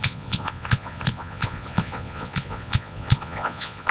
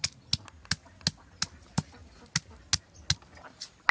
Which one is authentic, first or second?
second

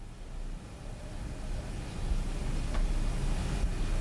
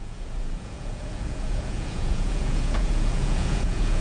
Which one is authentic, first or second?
first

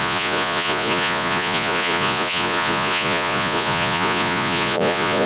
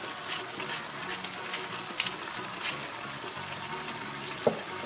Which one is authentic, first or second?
second